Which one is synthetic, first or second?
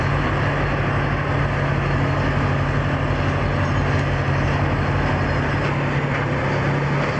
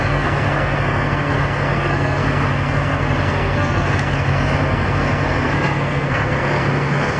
second